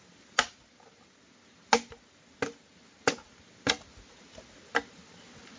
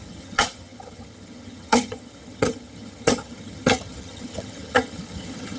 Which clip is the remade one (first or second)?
second